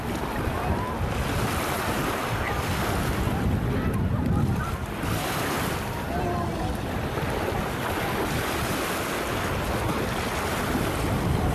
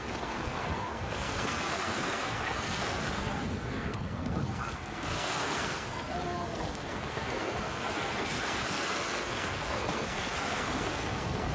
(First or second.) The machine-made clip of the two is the second